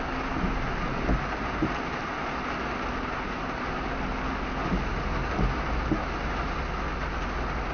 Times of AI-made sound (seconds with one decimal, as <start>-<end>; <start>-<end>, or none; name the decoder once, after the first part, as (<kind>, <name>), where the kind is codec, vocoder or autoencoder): none